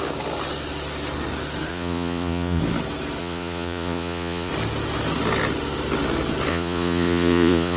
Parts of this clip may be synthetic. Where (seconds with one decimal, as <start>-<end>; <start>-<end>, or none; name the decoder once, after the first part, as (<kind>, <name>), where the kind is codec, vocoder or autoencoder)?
1.7-2.6 (vocoder, Vocos); 3.2-4.5; 6.5-7.8